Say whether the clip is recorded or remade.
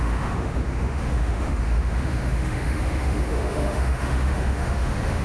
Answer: remade